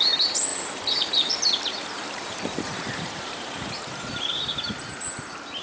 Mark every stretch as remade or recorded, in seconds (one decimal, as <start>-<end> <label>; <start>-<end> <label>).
0.0-0.5 recorded; 0.5-1.3 remade; 1.3-1.8 recorded; 1.8-5.0 remade; 5.0-5.6 recorded